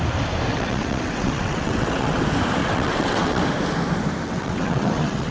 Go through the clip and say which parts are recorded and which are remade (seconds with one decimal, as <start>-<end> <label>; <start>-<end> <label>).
0.0-0.5 recorded; 0.5-2.2 remade; 2.2-2.6 recorded; 2.6-3.4 remade; 3.4-4.2 recorded; 4.2-5.3 remade